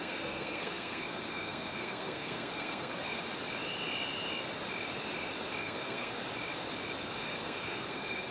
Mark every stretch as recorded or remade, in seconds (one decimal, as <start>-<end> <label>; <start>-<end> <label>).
0.0-3.2 remade; 3.2-5.6 recorded; 5.6-6.2 remade; 6.2-7.0 recorded; 7.0-8.3 remade